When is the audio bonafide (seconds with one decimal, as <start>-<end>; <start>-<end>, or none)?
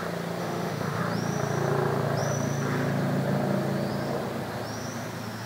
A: 0.0-0.4; 1.0-5.5